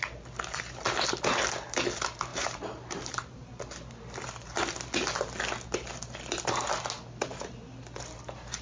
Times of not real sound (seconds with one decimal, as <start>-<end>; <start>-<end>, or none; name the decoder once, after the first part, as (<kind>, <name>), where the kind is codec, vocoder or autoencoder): 2.3-3.5 (vocoder, BigVGAN v2)